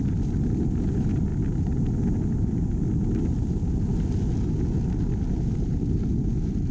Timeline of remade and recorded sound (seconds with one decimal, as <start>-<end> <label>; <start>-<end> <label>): 0.0-6.7 recorded